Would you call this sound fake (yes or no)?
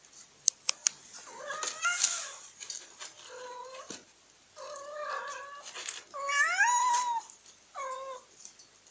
no